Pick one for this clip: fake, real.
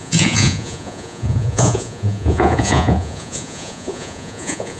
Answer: fake